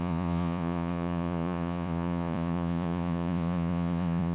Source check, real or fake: fake